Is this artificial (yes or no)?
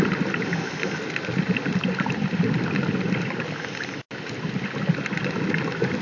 no